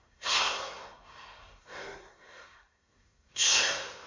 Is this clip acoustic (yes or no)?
no